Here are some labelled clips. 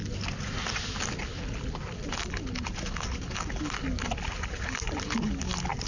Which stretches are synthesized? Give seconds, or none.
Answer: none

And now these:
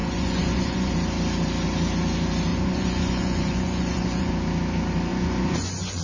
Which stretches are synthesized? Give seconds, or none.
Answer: 0.0-0.9 (vocoder, Vocos); 2.5-4.3; 5.1-6.0

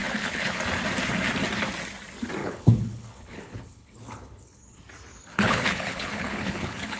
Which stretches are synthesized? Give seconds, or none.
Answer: 0.0-0.6 (codec, HILCodec); 2.4-4.8; 5.3-7.0

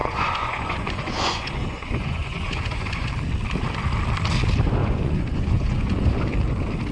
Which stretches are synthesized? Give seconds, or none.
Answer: 0.0-3.1 (vocoder, Vocos); 4.8-6.1

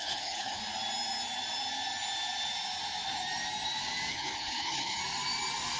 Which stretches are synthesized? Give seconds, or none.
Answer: 0.0-0.6 (codec, HILCodec); 4.1-5.0

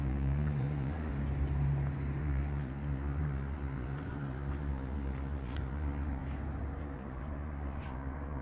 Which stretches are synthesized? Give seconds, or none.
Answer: 0.0-1.1 (vocoder, Vocos); 2.2-6.2; 6.8-8.4

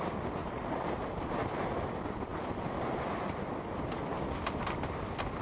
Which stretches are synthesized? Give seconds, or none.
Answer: 0.4-1.2 (vocoder, BigVGAN v2)

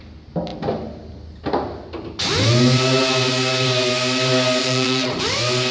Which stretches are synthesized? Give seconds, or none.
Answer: 4.6-5.2 (vocoder, Vocos)